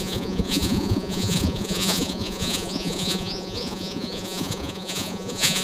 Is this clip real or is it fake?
fake